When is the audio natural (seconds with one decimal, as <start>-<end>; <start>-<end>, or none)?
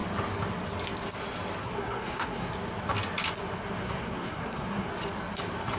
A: 0.0-1.6; 2.5-3.8; 4.9-5.8